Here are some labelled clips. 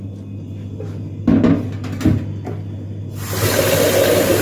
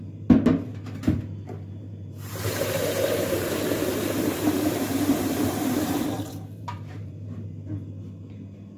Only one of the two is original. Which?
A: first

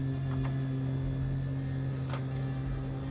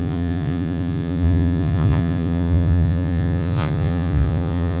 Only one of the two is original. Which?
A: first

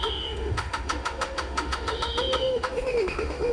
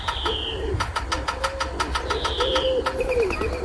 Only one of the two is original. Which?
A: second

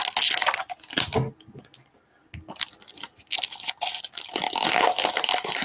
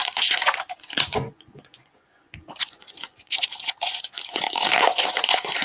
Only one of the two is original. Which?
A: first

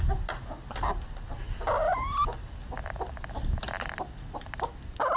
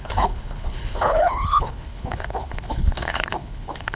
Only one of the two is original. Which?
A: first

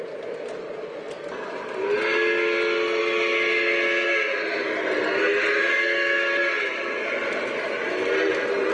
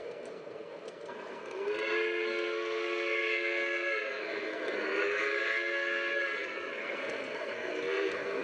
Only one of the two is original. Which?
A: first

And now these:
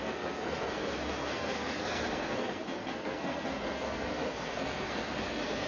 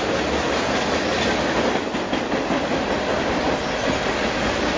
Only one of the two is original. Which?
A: second